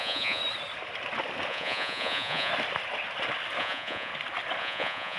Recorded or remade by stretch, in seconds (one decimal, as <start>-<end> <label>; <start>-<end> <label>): 0.0-0.4 remade; 0.4-1.5 recorded; 1.5-2.5 remade; 2.5-3.6 recorded; 3.6-4.1 remade; 4.1-4.6 recorded; 4.6-5.2 remade

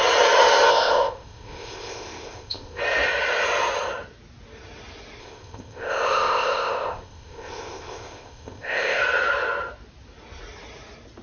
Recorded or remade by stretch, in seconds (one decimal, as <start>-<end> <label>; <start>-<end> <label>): 0.0-0.7 recorded; 0.7-2.8 remade; 2.8-5.2 recorded; 5.2-9.0 remade; 9.0-11.2 recorded

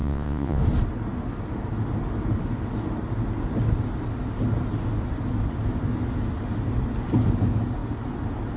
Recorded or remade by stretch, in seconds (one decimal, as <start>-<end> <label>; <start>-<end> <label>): 0.0-0.6 remade; 0.6-8.6 recorded

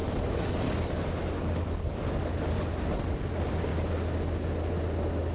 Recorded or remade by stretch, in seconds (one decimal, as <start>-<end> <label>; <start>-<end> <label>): 0.0-3.2 remade; 3.2-5.3 recorded

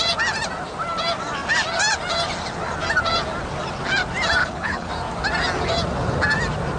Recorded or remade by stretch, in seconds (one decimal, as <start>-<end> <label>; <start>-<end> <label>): 0.0-4.4 recorded; 4.4-4.9 remade; 4.9-6.8 recorded